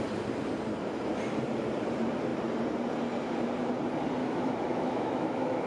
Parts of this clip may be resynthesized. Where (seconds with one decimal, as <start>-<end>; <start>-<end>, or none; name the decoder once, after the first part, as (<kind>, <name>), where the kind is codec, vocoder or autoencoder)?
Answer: 4.2-5.7 (autoencoder, DAC-VAE)